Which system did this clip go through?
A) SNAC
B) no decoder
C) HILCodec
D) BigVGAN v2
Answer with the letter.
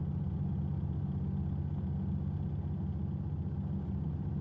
B